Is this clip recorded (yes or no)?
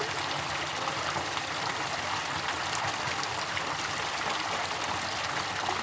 yes